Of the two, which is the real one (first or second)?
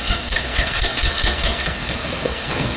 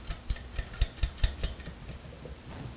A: second